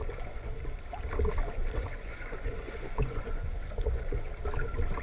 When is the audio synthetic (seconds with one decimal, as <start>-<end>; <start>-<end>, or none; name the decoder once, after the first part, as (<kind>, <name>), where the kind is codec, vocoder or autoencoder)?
0.0-0.5 (vocoder, Vocos); 1.4-4.3

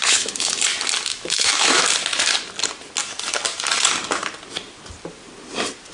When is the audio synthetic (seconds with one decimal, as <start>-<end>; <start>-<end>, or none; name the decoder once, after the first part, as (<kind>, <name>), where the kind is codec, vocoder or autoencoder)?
0.0-0.5 (autoencoder, DAC-VAE); 1.1-1.8

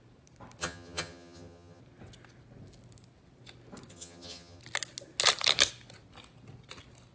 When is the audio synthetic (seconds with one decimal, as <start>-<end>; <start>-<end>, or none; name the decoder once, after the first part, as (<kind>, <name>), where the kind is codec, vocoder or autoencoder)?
0.6-1.8 (vocoder, HiFi-GAN); 3.9-4.6

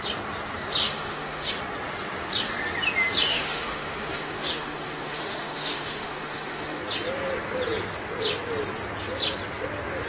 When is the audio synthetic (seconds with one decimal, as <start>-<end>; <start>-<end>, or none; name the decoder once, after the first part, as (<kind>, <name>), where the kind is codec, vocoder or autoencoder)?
0.8-1.5 (autoencoder, DAC-VAE); 3.3-6.8

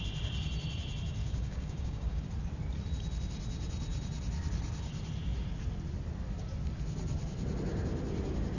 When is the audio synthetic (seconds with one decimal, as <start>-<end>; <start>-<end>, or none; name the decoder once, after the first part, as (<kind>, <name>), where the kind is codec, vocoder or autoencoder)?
1.2-2.2 (codec, DAC)

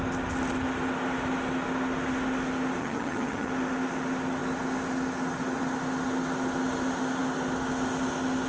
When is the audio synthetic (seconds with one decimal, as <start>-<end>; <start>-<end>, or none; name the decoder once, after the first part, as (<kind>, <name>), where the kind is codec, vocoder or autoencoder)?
2.8-3.5 (vocoder, HiFi-GAN)

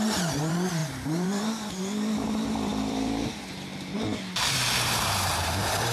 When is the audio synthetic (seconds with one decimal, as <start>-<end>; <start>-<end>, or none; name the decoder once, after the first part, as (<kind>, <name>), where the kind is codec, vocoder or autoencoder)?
0.0-3.7 (vocoder, BigVGAN v2); 4.5-5.9

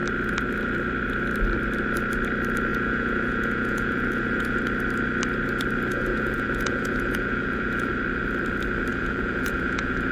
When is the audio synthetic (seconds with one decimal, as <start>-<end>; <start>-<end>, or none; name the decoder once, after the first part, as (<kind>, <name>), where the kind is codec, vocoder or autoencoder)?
2.7-4.6 (vocoder, Vocos); 5.9-7.9; 8.9-10.1